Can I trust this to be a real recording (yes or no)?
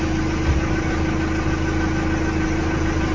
yes